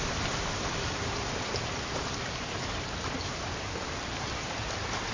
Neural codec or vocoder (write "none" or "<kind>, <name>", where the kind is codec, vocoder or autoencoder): vocoder, BigVGAN v2